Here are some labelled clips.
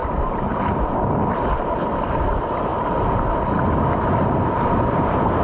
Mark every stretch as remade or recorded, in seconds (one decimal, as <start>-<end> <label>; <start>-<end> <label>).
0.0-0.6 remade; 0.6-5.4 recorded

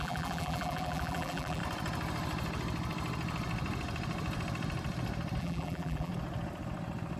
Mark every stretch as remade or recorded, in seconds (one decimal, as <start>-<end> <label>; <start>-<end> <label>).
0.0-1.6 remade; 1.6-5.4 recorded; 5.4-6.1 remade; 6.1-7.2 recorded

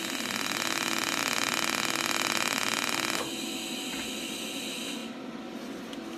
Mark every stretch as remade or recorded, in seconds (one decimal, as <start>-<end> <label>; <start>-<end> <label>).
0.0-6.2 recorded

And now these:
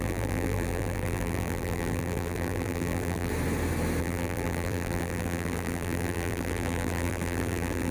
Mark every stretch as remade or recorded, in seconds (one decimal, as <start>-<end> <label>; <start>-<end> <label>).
0.0-3.3 remade; 3.3-4.0 recorded; 4.0-7.9 remade

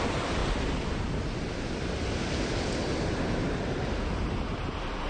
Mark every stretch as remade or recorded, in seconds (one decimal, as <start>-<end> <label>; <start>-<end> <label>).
0.0-0.4 recorded; 0.4-1.1 remade; 1.1-3.4 recorded; 3.4-4.0 remade; 4.0-5.1 recorded